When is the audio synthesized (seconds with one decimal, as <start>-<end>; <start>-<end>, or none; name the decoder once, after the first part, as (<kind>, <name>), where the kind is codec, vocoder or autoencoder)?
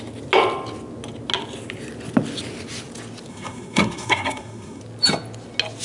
3.3-4.8 (codec, SNAC)